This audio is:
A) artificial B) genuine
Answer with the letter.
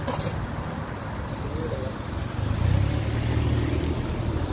B